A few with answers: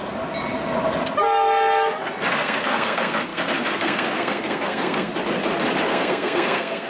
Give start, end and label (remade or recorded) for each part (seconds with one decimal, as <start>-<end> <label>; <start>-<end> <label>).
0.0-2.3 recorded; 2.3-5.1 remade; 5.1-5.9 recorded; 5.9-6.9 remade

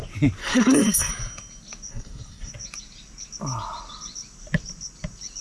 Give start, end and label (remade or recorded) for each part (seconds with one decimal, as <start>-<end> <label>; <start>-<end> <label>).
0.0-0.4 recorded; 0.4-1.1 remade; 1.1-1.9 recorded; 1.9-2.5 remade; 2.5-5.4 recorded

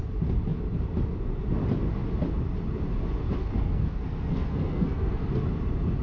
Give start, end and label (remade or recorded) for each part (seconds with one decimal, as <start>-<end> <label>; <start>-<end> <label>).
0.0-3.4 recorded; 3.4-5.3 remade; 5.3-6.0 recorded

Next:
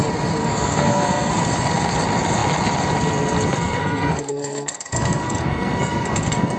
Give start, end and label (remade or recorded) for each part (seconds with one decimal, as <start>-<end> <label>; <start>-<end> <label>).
0.0-0.4 recorded; 0.4-1.3 remade; 1.3-3.5 recorded; 3.5-6.6 remade

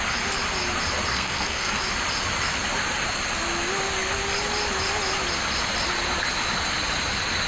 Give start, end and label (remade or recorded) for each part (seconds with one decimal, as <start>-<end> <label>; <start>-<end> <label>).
0.0-1.1 recorded; 1.1-1.8 remade; 1.8-7.5 recorded

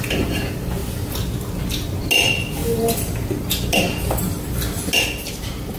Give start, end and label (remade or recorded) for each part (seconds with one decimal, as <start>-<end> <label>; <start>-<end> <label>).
0.0-5.8 recorded

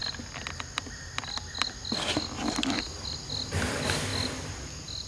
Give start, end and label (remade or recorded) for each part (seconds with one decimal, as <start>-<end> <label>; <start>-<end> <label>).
0.0-5.1 recorded

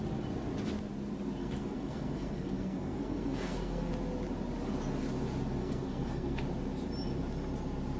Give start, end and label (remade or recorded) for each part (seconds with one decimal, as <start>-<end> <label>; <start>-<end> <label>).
0.0-1.4 recorded; 1.4-3.9 remade; 3.9-5.6 recorded; 5.6-6.4 remade; 6.4-8.0 recorded